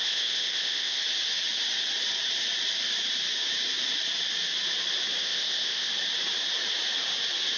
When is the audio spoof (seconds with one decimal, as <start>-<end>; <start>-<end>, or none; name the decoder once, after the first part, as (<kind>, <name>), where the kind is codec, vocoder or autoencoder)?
0.0-1.0 (codec, ZipCodec); 5.2-5.9